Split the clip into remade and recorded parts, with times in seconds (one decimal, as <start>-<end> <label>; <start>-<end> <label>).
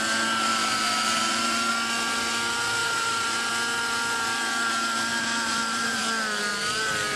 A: 0.0-0.5 recorded; 0.5-1.7 remade; 1.7-2.8 recorded; 2.8-3.5 remade; 3.5-5.1 recorded; 5.1-6.0 remade; 6.0-7.2 recorded